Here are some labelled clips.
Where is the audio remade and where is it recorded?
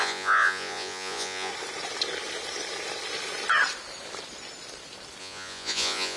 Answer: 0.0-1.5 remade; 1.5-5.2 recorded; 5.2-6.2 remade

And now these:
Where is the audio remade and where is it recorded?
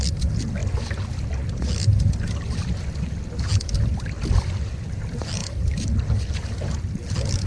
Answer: 0.0-7.5 recorded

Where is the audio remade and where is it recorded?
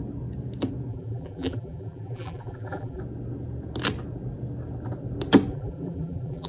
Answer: 0.0-0.9 recorded; 0.9-3.0 remade; 3.0-5.5 recorded; 5.5-6.5 remade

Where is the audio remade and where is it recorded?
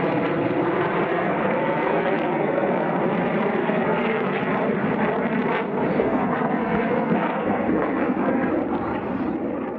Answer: 0.0-1.1 recorded; 1.1-3.0 remade; 3.0-3.6 recorded; 3.6-4.4 remade; 4.4-5.9 recorded; 5.9-8.5 remade; 8.5-9.8 recorded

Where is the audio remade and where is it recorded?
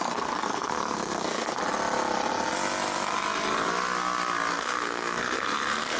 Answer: 0.0-1.6 remade; 1.6-4.5 recorded; 4.5-6.0 remade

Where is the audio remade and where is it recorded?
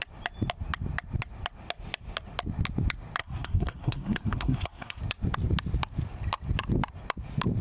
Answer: 0.0-3.2 recorded; 3.2-5.0 remade; 5.0-7.6 recorded